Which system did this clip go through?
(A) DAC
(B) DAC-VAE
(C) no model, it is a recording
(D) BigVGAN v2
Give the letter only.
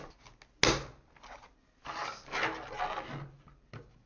C